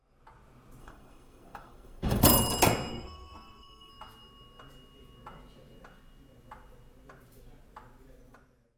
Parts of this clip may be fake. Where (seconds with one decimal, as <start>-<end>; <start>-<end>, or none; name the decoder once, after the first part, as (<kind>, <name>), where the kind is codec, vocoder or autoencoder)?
0.8-2.2 (codec, SNAC); 2.9-3.9